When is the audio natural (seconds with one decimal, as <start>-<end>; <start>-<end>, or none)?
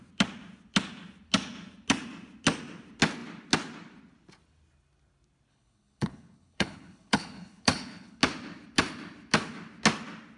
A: 0.0-5.5; 8.2-10.4